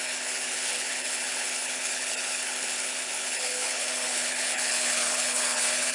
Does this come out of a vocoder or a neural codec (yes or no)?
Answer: yes